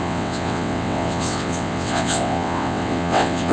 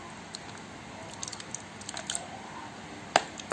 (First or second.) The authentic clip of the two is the second